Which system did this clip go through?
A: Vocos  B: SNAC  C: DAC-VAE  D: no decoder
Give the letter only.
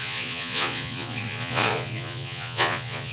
A